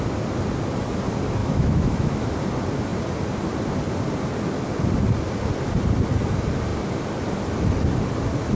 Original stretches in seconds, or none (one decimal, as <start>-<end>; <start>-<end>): 0.0-1.4; 2.3-8.5